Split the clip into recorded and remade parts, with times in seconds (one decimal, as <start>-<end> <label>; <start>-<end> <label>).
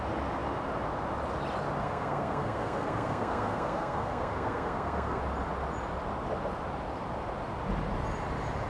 0.0-1.8 recorded; 1.8-5.2 remade; 5.2-8.7 recorded